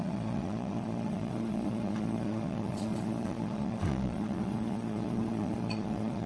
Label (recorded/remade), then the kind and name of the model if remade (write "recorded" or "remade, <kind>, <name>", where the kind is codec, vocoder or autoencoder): remade, vocoder, Vocos